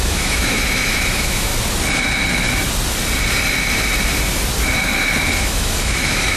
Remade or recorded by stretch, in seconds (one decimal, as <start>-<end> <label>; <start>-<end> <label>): 0.0-1.5 remade; 1.5-5.3 recorded; 5.3-6.4 remade